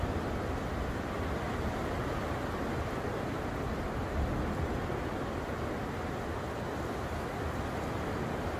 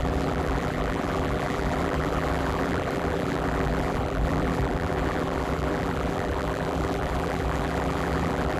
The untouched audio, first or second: first